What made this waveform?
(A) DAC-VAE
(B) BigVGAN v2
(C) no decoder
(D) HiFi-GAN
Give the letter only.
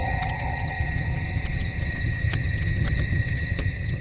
D